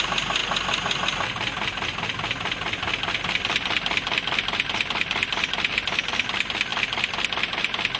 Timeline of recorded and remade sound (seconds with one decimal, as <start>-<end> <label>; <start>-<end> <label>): 0.0-8.0 recorded